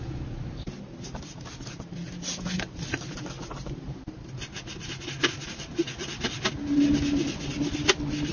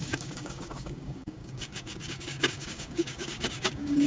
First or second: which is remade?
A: second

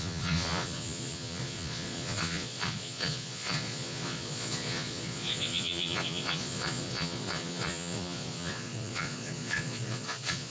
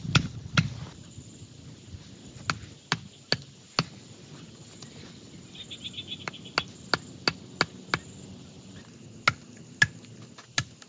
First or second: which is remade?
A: first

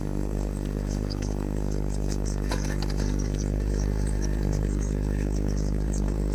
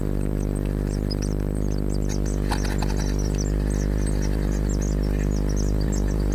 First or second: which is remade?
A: first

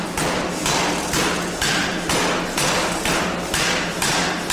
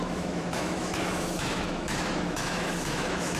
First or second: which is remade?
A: second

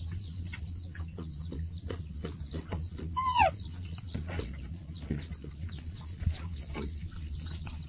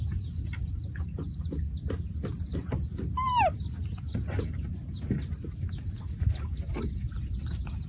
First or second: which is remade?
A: first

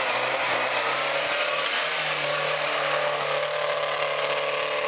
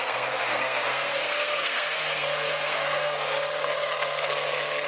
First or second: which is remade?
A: second